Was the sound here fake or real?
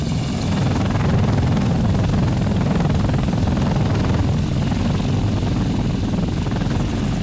real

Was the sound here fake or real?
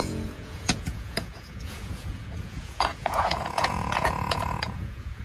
fake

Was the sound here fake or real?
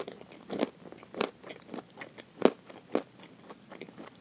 real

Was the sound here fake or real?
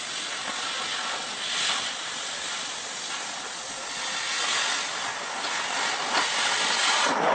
real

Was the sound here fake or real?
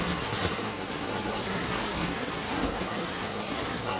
fake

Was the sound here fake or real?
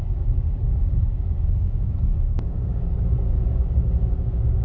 fake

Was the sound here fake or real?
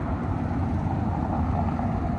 real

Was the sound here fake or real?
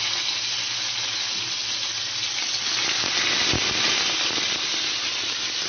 real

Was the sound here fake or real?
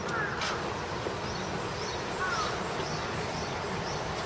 real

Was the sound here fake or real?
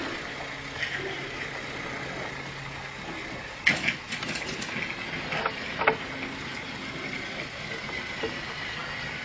real